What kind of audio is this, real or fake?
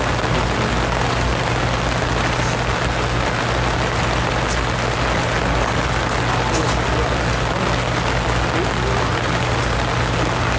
real